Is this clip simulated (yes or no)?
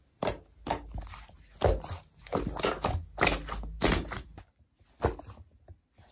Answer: no